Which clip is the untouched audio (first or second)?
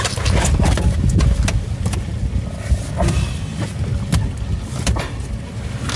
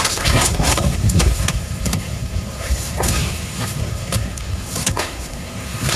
first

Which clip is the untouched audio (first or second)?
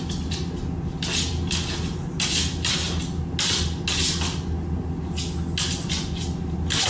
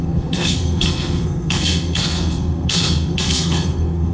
first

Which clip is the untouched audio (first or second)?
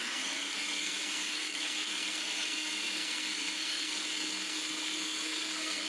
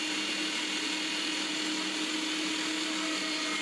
second